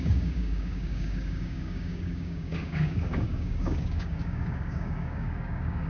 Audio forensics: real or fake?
fake